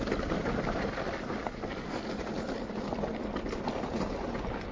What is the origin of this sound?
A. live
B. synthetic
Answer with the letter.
A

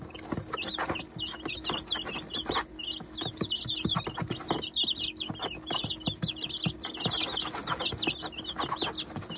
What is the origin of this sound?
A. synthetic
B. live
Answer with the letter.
B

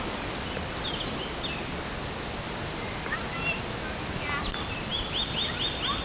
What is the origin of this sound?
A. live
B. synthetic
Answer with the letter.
A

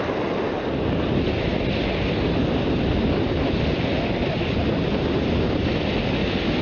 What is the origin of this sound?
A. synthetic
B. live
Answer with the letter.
B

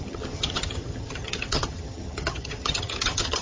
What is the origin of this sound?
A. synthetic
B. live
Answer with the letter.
A